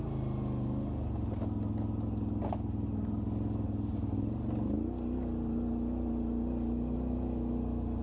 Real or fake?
real